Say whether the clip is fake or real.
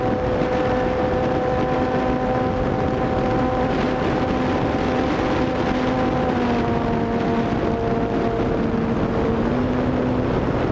real